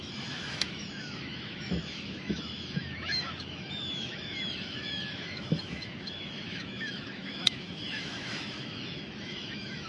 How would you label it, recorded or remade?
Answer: remade